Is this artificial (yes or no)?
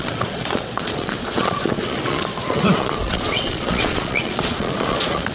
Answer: yes